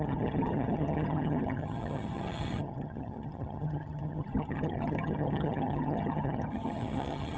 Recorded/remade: remade